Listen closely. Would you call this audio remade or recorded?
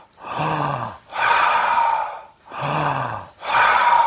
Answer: recorded